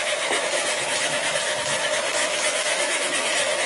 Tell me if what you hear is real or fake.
fake